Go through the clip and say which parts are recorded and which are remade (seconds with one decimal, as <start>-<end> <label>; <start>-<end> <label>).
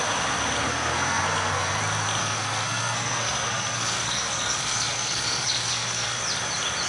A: 0.0-0.7 recorded; 0.7-1.8 remade; 1.8-2.2 recorded; 2.2-6.2 remade; 6.2-6.9 recorded